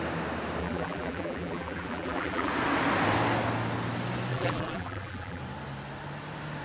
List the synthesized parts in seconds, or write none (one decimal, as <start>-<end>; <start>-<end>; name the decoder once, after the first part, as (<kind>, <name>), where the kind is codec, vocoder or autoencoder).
0.6-2.5 (vocoder, BigVGAN v2); 4.3-5.4

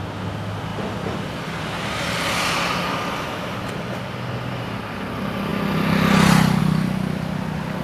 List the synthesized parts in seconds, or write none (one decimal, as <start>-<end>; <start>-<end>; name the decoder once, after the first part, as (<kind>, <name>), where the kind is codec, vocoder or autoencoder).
none

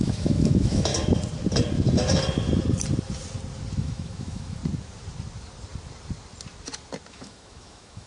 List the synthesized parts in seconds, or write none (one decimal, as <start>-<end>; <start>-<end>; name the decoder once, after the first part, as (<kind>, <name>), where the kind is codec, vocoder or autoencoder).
0.0-0.9 (autoencoder, DAC-VAE); 3.8-4.6; 7.1-8.1